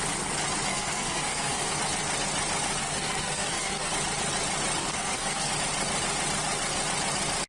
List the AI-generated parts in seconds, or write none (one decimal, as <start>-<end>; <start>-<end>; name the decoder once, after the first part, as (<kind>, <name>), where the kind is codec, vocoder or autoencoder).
0.7-1.7 (codec, SNAC); 2.8-3.9; 4.8-5.5